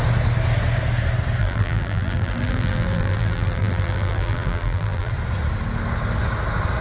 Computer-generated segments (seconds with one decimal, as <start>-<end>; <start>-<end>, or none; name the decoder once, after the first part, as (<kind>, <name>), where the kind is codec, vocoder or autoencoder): 1.4-5.1 (vocoder, BigVGAN v2)